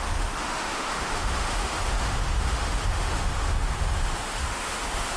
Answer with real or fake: fake